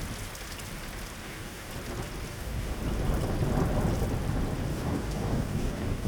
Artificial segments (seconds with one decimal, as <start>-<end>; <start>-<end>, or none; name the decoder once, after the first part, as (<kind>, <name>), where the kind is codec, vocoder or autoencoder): 1.2-1.7 (codec, DAC); 2.3-2.8; 4.7-6.1